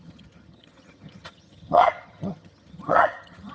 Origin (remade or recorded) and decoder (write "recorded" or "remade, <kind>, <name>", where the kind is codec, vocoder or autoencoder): remade, vocoder, HiFi-GAN